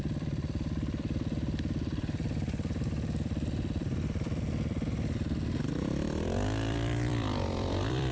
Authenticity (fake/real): fake